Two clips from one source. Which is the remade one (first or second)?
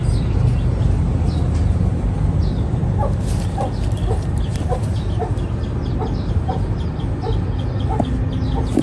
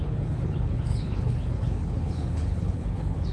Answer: second